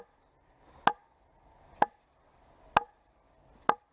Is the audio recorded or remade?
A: recorded